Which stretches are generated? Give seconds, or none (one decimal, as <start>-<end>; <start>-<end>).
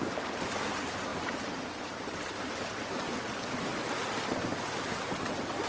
0.0-1.1; 3.3-3.7